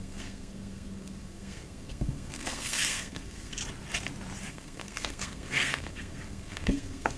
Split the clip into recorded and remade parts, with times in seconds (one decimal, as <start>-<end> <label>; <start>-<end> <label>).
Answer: 0.0-3.6 remade; 3.6-4.5 recorded; 4.5-7.2 remade